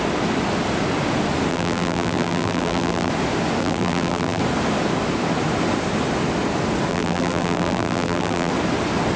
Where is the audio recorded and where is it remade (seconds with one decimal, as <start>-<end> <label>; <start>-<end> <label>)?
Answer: 0.0-1.5 recorded; 1.5-3.1 remade; 3.1-3.6 recorded; 3.6-4.4 remade; 4.4-6.9 recorded; 6.9-8.5 remade; 8.5-9.2 recorded